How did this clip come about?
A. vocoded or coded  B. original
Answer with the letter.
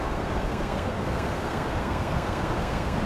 A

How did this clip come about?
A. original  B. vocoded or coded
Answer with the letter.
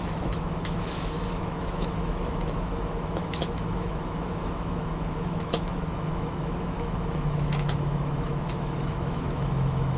B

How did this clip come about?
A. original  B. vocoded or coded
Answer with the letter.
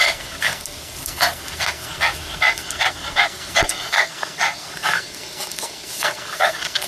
B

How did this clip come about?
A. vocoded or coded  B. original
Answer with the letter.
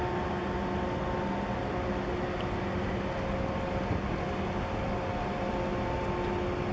B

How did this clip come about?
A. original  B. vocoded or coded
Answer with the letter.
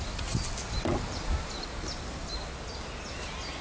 A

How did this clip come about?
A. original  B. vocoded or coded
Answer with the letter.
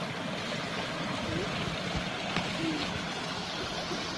A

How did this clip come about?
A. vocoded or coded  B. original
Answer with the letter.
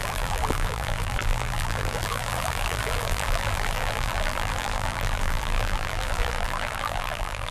A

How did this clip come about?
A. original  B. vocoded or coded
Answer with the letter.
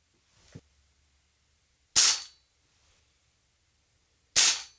A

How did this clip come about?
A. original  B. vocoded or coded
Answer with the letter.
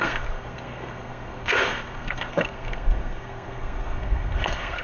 B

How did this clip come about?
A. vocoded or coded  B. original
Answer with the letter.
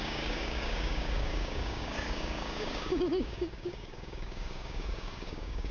A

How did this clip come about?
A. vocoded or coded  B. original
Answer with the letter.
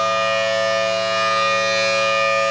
B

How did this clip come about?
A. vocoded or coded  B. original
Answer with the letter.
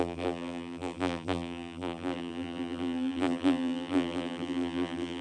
A